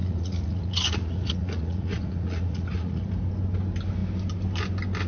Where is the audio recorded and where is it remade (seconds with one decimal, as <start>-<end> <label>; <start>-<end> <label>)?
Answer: 0.0-3.1 remade; 3.1-5.1 recorded